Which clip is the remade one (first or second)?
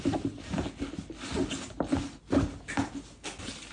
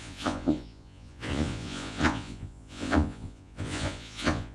second